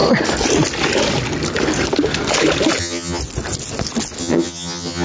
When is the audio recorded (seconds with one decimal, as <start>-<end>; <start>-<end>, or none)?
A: 0.0-2.8; 3.2-4.2